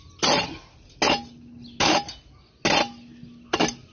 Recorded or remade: recorded